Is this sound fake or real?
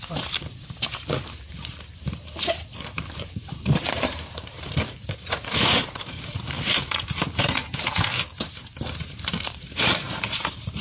fake